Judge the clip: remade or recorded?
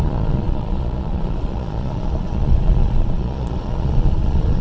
remade